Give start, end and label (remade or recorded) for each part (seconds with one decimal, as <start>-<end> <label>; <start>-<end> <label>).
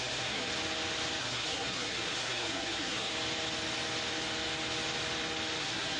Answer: 0.0-0.5 remade; 0.5-1.2 recorded; 1.2-3.1 remade; 3.1-5.6 recorded; 5.6-6.0 remade